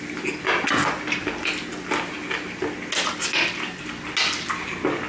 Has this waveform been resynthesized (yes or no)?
no